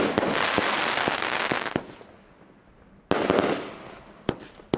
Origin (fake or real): real